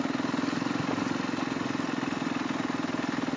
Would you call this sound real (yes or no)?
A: yes